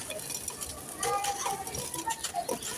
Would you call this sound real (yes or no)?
yes